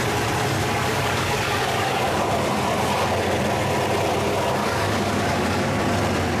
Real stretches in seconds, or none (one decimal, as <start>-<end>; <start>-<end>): 0.0-0.6; 2.3-4.6; 5.8-6.4